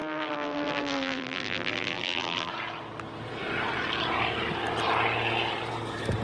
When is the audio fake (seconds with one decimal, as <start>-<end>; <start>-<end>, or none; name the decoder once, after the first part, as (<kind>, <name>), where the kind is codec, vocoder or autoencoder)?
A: 0.0-2.5 (vocoder, BigVGAN v2)

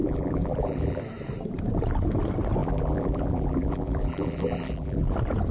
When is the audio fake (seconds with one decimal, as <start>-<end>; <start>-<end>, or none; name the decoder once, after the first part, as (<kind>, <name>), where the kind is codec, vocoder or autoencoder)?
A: 0.0-1.0 (vocoder, BigVGAN v2); 2.6-5.1

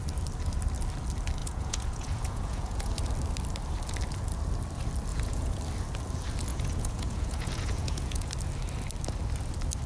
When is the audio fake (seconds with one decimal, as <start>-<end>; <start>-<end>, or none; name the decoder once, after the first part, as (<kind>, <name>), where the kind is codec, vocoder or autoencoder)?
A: 1.4-2.9 (vocoder, Vocos); 5.1-5.6; 6.5-8.3

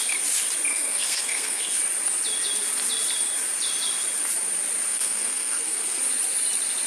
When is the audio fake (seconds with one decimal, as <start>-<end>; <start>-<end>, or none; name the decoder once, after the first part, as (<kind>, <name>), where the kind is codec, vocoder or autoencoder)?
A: 0.7-1.8 (codec, SNAC); 4.9-6.0